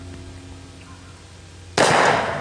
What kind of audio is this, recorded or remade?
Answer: recorded